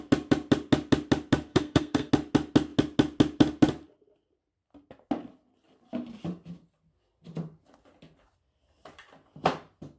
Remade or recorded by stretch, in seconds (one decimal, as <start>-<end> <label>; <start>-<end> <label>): 0.0-1.5 recorded; 1.5-2.1 remade; 2.1-10.0 recorded